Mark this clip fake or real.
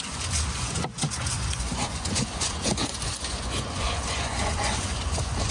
fake